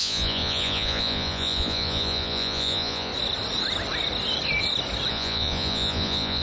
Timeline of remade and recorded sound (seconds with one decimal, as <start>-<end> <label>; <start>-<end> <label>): 0.0-3.1 remade; 3.1-5.1 recorded; 5.1-6.4 remade